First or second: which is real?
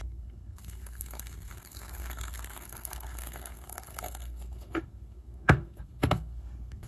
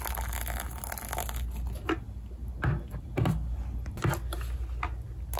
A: second